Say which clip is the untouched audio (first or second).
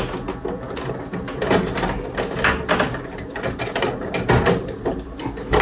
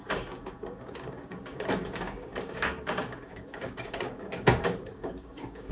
first